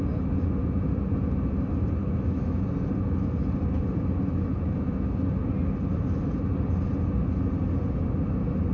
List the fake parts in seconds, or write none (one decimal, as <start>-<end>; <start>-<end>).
2.0-2.7